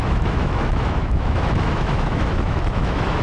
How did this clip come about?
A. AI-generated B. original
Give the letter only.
A